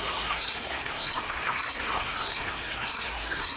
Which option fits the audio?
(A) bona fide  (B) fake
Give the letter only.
B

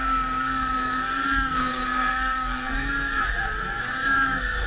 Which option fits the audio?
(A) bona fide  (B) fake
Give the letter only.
B